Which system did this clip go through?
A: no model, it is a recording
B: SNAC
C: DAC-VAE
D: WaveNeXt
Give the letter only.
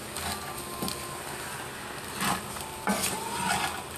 A